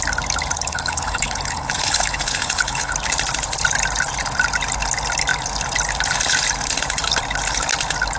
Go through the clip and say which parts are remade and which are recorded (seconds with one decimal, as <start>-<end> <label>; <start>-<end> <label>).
0.0-0.7 recorded; 0.7-2.9 remade; 2.9-8.2 recorded